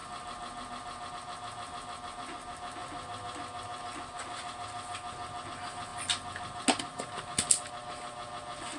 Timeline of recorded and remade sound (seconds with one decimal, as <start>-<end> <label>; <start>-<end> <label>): 0.0-8.8 recorded